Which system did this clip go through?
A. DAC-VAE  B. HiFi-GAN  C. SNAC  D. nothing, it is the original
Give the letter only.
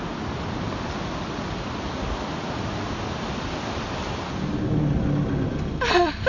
D